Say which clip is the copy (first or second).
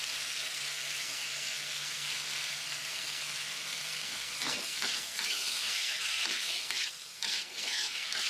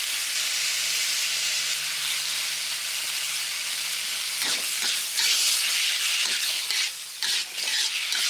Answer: first